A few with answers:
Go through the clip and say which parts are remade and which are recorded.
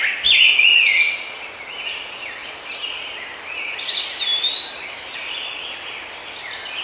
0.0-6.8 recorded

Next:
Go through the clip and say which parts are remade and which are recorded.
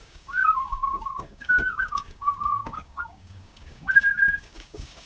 0.0-5.1 remade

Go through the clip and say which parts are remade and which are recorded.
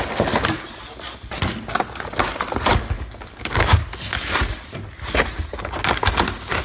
0.0-2.7 recorded; 2.7-3.7 remade; 3.7-6.6 recorded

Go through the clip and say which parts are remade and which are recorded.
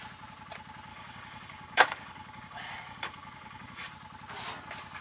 0.0-0.9 recorded; 0.9-3.9 remade; 3.9-5.0 recorded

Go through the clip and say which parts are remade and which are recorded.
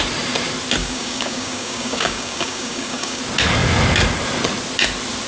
0.0-0.8 recorded; 0.8-3.2 remade; 3.2-5.3 recorded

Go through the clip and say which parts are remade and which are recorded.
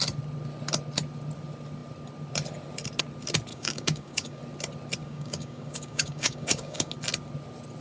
0.0-3.5 recorded; 3.5-4.4 remade; 4.4-5.0 recorded; 5.0-6.9 remade; 6.9-7.8 recorded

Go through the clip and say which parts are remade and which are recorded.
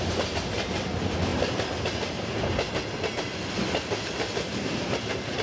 0.0-5.4 recorded